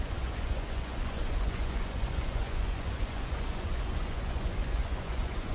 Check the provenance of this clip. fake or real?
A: fake